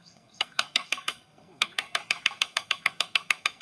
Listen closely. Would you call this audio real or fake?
fake